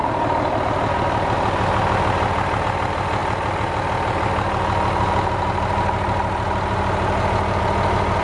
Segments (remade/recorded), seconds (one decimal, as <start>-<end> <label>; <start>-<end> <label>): 0.0-8.2 recorded